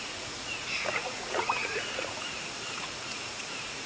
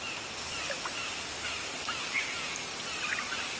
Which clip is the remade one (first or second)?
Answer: first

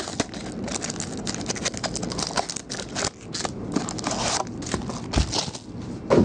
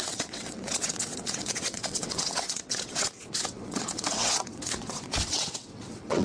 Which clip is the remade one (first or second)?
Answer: second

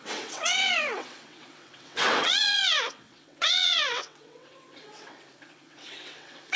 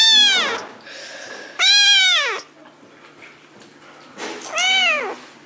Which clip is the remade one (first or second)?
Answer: first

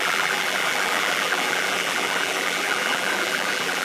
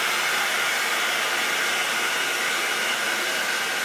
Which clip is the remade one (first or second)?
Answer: first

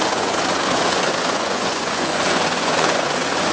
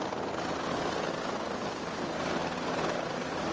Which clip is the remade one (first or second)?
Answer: first